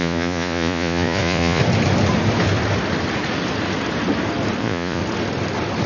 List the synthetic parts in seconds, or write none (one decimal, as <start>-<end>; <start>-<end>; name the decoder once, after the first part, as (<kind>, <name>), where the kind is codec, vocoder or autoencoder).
0.0-1.6 (vocoder, Vocos); 4.6-5.0